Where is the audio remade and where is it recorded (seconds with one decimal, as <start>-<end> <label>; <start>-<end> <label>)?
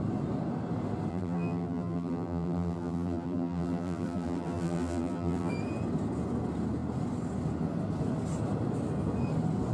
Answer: 0.0-1.1 recorded; 1.1-5.5 remade; 5.5-9.7 recorded